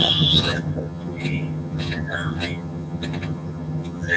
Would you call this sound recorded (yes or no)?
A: no